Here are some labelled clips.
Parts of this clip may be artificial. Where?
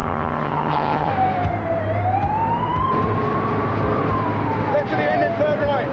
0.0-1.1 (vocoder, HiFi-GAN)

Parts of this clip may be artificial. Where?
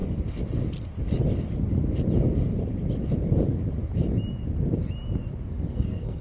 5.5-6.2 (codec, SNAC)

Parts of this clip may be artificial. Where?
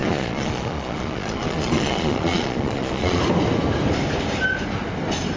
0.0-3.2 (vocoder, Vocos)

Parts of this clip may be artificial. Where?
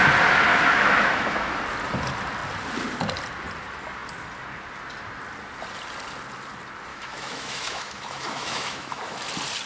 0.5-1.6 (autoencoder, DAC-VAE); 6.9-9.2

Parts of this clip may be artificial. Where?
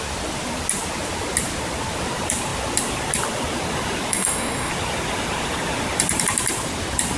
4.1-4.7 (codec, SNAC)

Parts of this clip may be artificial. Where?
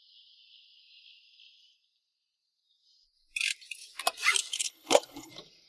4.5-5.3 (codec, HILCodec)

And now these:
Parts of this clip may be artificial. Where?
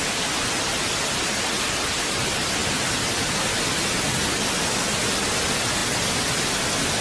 none